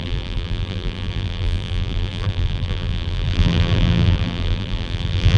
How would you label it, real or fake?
fake